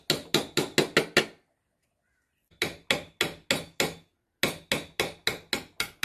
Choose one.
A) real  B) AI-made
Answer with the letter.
A